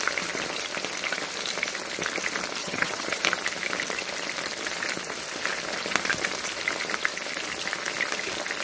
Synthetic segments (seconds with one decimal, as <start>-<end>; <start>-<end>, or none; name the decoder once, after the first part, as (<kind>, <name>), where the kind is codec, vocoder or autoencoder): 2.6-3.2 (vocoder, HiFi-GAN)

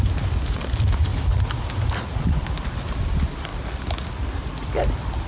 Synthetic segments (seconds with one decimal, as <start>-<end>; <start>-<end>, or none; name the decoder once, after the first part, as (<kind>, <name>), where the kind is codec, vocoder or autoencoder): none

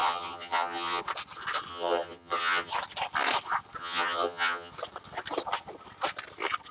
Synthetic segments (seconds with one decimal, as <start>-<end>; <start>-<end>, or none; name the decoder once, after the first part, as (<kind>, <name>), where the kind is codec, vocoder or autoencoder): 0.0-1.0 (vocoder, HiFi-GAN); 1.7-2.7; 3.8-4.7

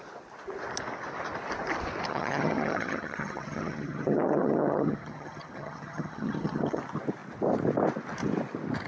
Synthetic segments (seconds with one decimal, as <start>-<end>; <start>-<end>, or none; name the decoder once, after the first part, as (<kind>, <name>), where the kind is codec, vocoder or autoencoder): 2.1-6.8 (vocoder, HiFi-GAN)

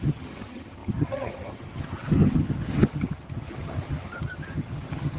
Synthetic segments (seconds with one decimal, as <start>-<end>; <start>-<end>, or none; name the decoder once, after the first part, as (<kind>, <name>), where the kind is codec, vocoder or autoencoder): 0.0-5.2 (vocoder, HiFi-GAN)